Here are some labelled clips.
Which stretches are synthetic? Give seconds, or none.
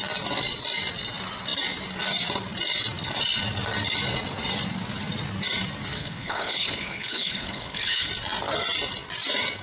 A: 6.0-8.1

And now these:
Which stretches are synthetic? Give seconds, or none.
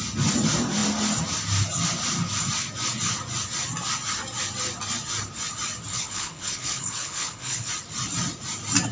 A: 5.9-7.7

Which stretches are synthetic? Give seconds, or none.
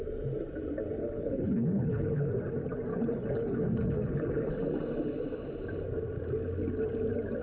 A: 1.0-2.3; 2.9-4.5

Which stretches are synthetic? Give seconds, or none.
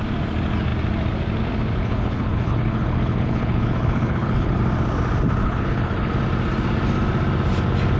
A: 1.8-4.6; 5.4-6.1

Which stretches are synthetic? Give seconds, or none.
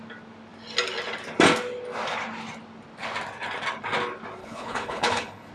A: 4.4-5.5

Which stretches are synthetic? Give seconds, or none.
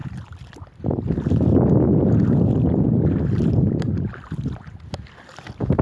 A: none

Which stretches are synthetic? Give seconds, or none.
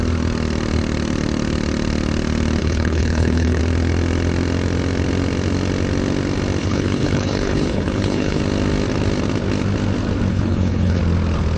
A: 2.6-3.6; 6.6-8.4; 10.3-11.0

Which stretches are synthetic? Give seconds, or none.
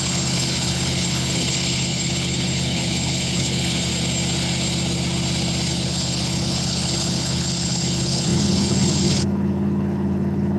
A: 0.0-3.9; 5.7-10.6